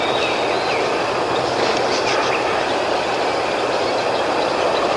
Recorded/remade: recorded